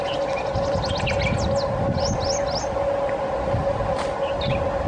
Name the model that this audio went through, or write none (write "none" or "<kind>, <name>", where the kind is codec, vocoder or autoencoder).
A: none